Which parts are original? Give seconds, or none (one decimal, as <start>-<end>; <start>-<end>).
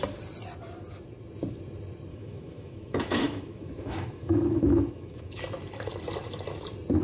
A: 0.0-2.1; 5.4-7.0